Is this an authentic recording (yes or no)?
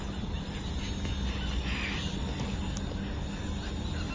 yes